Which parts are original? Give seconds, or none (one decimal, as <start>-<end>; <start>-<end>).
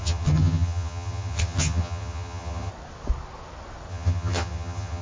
2.7-3.9